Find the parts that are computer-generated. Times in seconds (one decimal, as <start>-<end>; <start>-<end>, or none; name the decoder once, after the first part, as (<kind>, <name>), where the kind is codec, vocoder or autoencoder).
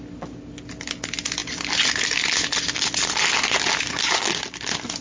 none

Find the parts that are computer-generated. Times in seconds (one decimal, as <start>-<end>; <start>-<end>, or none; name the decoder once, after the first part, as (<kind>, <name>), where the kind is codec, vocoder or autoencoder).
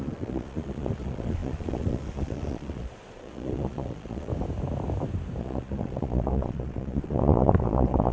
0.0-4.3 (vocoder, Vocos); 5.4-8.1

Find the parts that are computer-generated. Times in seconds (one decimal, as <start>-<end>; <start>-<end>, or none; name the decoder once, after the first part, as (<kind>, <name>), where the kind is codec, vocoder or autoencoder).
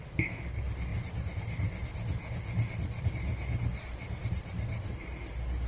none